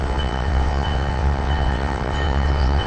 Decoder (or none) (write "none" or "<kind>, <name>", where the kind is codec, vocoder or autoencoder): vocoder, WaveNeXt